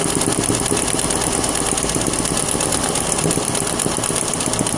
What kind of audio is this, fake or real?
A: real